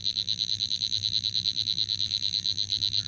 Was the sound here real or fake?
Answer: fake